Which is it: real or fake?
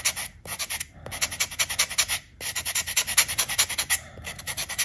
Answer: real